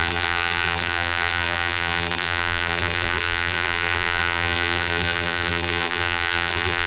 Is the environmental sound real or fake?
fake